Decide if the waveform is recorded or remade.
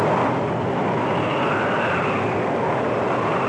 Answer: recorded